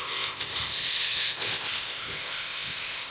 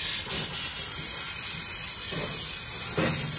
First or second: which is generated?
first